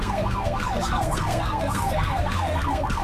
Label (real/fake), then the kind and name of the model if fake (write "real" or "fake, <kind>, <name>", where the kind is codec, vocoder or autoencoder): fake, codec, SNAC